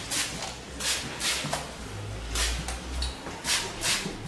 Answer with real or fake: real